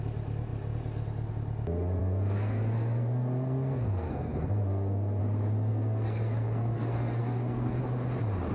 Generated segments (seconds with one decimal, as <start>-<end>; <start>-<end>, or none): 2.0-5.2; 5.7-7.8